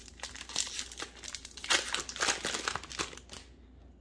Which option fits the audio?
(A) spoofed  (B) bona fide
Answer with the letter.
B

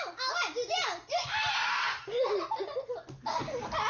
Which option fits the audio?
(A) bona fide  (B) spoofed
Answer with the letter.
A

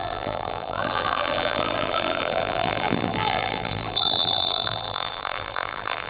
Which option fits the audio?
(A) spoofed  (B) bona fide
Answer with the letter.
A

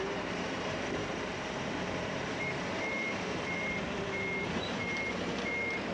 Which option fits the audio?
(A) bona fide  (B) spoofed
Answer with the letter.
B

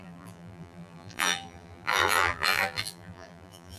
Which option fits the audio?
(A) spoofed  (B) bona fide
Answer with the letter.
A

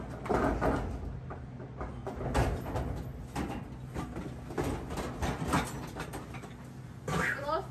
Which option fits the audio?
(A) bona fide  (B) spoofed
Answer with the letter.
A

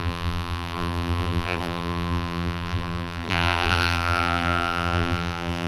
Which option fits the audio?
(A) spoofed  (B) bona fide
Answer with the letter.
A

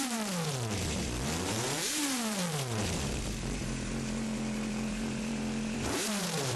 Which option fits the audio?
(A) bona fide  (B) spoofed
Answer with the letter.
B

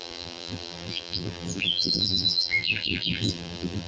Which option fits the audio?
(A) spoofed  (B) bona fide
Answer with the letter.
A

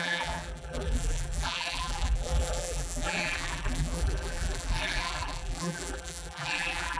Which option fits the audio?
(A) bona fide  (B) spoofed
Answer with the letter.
B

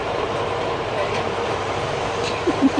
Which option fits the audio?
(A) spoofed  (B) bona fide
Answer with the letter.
A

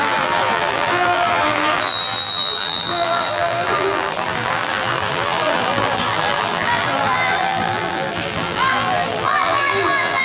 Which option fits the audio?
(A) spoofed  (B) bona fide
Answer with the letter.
A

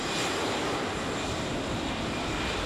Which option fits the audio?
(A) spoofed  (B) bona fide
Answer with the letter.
A